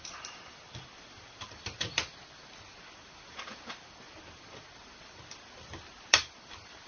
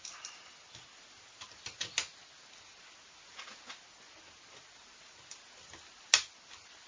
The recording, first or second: second